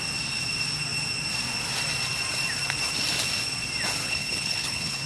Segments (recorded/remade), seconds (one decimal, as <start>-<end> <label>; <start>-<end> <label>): 0.0-4.0 recorded; 4.0-5.1 remade